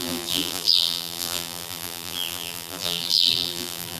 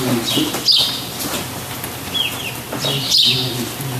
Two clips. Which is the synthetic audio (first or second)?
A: first